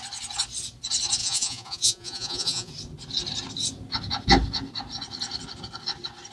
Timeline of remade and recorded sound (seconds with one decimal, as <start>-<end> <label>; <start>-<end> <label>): 0.0-1.2 recorded; 1.2-2.7 remade; 2.7-6.3 recorded